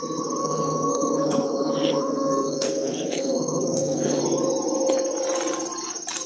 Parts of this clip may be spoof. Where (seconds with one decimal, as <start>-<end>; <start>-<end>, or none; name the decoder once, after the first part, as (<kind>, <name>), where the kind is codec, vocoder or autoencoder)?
0.4-4.2 (codec, SNAC)